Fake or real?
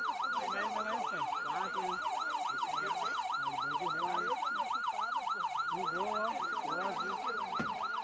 real